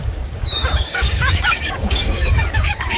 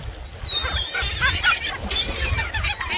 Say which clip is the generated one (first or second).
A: first